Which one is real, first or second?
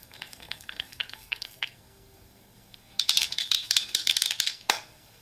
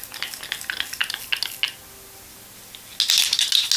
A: second